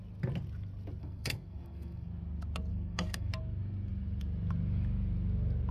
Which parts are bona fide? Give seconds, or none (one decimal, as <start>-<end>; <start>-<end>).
0.0-1.0; 2.1-2.7; 3.3-5.7

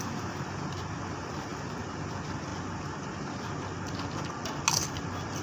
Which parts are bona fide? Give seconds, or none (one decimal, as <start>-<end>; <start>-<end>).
0.0-5.4

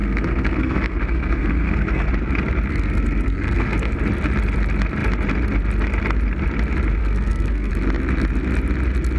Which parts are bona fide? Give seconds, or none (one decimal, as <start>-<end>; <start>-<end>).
2.1-2.7; 3.9-7.0; 7.7-9.2

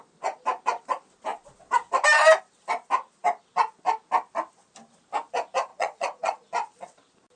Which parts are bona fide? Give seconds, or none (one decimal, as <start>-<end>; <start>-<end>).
0.0-5.7; 6.5-7.4

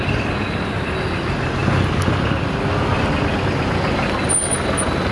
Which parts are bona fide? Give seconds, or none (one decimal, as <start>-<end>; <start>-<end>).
0.0-5.1

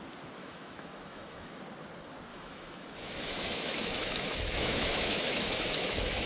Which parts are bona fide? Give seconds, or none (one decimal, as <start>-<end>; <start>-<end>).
0.0-0.4; 1.6-2.3